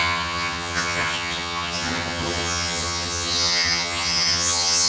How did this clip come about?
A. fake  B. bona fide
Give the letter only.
A